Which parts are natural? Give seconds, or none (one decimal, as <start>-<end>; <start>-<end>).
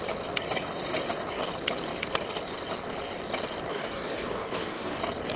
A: 0.0-3.7; 5.0-5.4